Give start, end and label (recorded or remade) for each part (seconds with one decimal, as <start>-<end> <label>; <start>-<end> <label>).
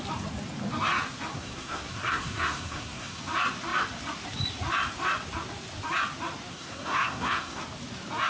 0.0-1.3 recorded; 1.3-3.2 remade; 3.2-6.5 recorded; 6.5-7.6 remade; 7.6-8.3 recorded